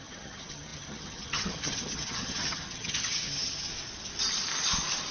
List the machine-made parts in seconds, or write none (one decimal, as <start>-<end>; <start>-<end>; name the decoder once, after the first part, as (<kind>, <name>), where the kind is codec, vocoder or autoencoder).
0.0-3.7 (vocoder, HiFi-GAN)